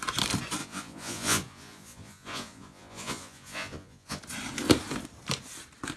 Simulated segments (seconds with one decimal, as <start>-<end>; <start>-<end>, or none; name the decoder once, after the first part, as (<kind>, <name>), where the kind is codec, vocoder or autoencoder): 0.6-4.2 (vocoder, Vocos)